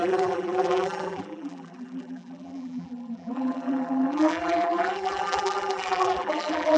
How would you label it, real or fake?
fake